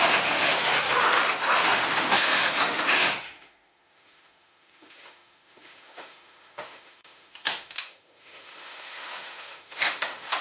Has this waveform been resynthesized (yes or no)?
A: yes